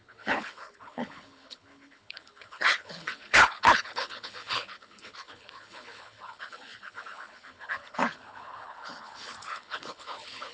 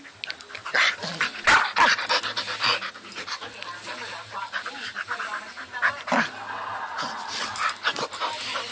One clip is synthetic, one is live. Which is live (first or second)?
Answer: second